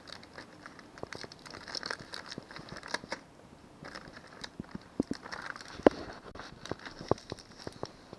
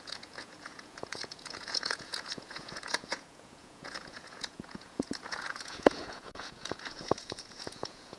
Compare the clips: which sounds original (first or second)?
first